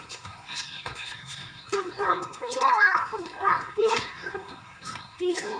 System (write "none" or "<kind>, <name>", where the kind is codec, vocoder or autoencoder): codec, SNAC